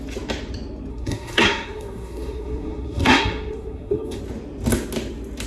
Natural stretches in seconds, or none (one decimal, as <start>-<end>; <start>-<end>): 0.0-0.9; 4.2-5.5